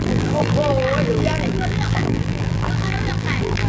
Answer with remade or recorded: remade